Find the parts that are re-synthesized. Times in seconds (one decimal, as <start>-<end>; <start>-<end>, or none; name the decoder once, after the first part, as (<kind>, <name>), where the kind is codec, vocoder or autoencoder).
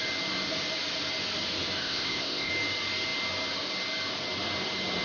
1.8-2.5 (codec, ZipCodec)